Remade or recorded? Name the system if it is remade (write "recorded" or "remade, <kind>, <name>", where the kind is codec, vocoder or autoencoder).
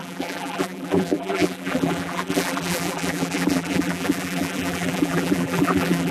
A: remade, vocoder, BigVGAN v2